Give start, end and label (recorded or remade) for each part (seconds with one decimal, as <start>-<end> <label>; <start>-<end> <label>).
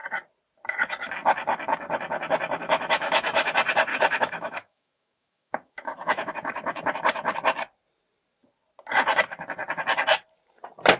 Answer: 0.0-2.6 recorded; 2.6-3.5 remade; 3.5-3.9 recorded; 3.9-6.3 remade; 6.3-11.0 recorded